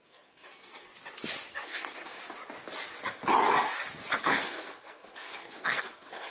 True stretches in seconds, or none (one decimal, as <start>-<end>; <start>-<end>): 0.9-1.5; 2.2-4.2